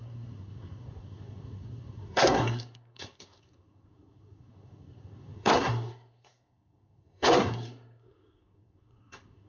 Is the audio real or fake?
fake